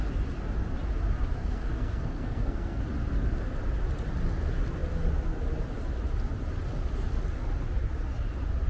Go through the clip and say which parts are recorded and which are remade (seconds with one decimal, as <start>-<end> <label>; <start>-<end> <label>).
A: 0.0-1.4 recorded; 1.4-2.8 remade; 2.8-8.7 recorded